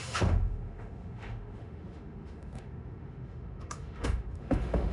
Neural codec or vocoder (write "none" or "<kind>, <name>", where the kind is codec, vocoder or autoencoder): autoencoder, DAC-VAE